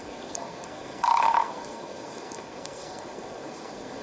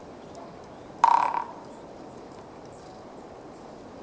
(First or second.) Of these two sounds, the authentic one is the second